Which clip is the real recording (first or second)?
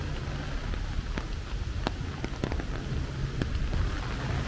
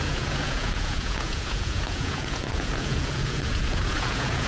first